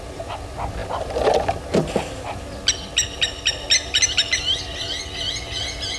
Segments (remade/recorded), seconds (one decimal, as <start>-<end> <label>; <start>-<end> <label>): 0.0-6.0 recorded